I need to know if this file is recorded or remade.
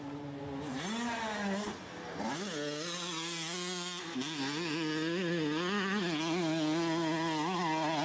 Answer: recorded